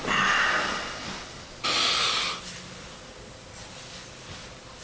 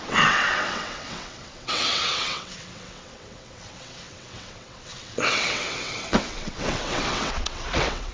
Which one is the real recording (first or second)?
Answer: first